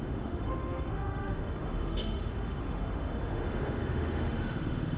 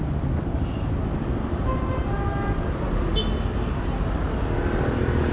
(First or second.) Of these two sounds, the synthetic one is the first